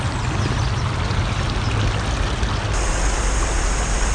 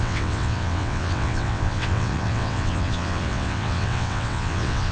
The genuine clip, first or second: first